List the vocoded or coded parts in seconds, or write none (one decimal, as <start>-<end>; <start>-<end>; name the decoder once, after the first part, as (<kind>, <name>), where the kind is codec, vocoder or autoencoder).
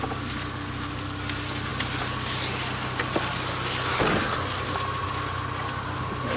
none